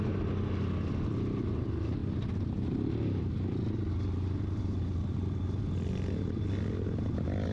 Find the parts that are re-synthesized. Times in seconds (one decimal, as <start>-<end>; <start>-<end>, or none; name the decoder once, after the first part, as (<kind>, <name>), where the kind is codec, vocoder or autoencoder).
none